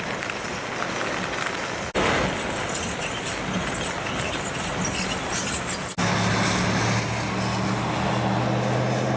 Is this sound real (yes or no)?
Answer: yes